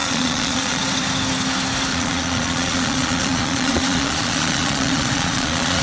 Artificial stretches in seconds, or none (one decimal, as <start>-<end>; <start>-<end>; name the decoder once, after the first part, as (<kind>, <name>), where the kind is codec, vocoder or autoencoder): 0.0-0.8 (vocoder, Vocos); 1.9-5.8